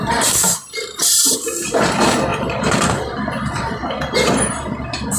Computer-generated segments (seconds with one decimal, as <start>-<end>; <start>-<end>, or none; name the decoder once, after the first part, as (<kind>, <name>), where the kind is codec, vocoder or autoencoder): 0.0-1.9 (vocoder, BigVGAN v2); 2.3-3.8